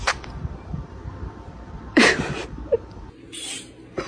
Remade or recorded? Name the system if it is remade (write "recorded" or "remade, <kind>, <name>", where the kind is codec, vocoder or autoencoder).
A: remade, vocoder, BigVGAN v2